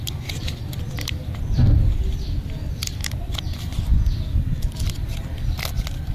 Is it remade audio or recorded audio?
recorded